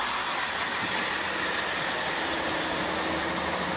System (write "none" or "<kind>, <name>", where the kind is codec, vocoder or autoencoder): none